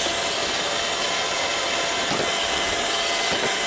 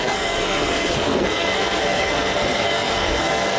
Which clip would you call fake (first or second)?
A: second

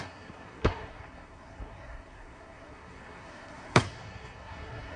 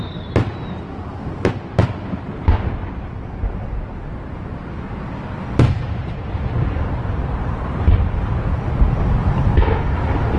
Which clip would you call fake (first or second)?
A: first